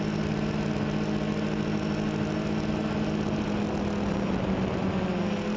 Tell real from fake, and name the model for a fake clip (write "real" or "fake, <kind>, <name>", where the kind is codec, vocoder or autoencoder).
real